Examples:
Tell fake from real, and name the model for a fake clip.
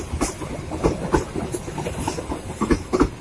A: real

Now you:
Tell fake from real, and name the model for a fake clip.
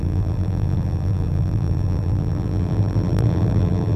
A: fake, vocoder, BigVGAN v2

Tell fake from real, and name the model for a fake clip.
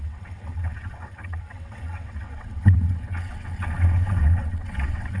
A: fake, vocoder, WaveNeXt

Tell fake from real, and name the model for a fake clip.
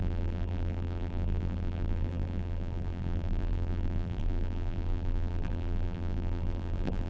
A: fake, vocoder, BigVGAN v2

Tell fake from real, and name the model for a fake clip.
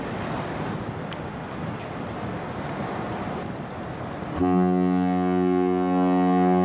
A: real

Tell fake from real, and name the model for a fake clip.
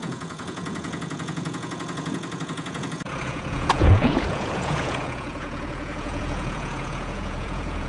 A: fake, vocoder, Vocos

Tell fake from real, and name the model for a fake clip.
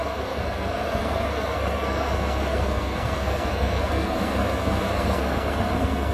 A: fake, codec, SNAC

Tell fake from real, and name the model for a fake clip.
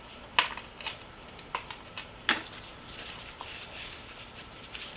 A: real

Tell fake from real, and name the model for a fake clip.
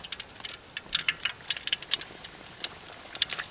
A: real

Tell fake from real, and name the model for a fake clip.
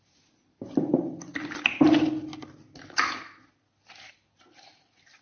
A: real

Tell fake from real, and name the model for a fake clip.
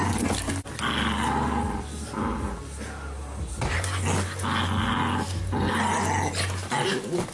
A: real